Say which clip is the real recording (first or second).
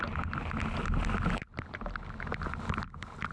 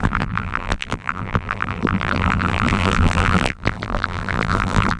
first